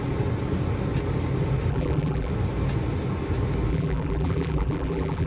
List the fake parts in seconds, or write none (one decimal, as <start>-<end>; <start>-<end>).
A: 1.7-2.3; 3.7-5.3